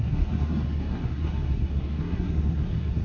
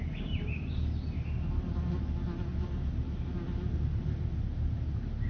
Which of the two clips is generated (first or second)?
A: first